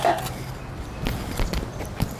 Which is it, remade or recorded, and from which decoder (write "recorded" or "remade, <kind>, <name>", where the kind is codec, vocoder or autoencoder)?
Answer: recorded